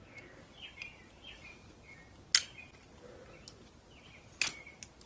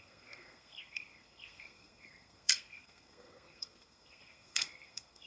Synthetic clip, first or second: second